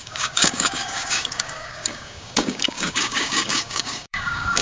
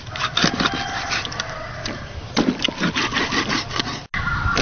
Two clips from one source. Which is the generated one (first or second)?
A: first